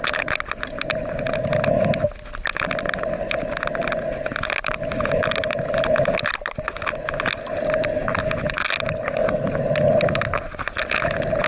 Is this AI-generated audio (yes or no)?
no